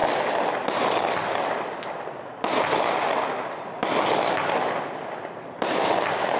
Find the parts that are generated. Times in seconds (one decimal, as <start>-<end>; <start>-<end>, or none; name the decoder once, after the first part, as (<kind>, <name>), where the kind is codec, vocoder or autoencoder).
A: none